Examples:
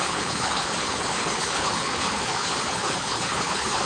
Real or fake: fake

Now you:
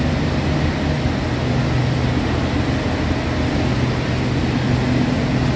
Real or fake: real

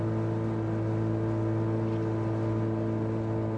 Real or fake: real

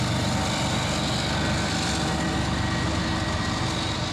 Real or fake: real